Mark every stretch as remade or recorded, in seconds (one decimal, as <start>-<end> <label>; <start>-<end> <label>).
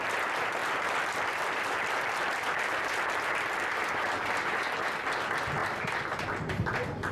0.0-0.6 recorded; 0.6-3.9 remade; 3.9-5.6 recorded; 5.6-6.2 remade; 6.2-7.1 recorded